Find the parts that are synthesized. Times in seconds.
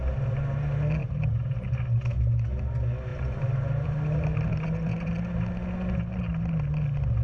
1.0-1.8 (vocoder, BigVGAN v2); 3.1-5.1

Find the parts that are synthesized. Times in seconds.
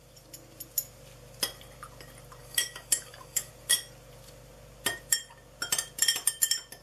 2.4-3.5 (codec, DAC)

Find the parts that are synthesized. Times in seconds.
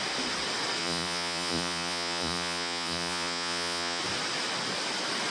0.8-4.0 (vocoder, Vocos)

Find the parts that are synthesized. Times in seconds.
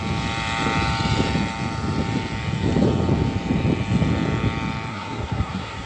4.9-5.9 (codec, SNAC)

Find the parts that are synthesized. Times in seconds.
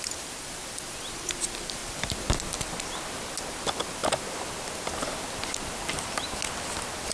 0.0-1.8 (vocoder, BigVGAN v2); 3.5-4.0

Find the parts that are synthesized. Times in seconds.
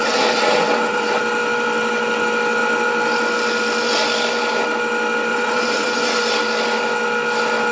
0.0-1.2 (vocoder, WaveNeXt); 5.3-6.2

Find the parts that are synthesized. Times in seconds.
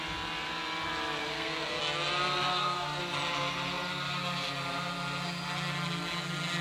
1.2-1.8 (codec, SNAC); 2.5-3.0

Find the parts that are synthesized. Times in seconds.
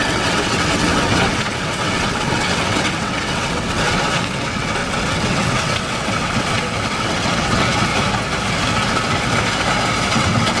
0.0-7.9 (vocoder, WaveNeXt); 10.1-10.6